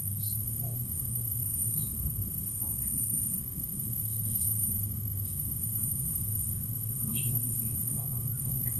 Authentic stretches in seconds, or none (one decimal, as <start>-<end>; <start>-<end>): none